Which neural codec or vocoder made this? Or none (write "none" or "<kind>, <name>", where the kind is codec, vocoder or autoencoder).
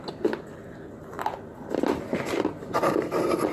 none